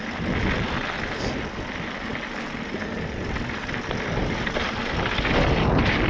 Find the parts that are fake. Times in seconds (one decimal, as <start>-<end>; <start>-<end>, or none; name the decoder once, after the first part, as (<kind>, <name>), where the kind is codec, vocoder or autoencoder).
none